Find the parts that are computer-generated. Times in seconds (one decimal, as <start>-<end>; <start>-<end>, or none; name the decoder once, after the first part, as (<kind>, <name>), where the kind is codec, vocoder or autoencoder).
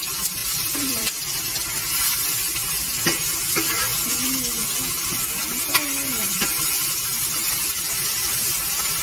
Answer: 0.4-3.0 (vocoder, BigVGAN v2)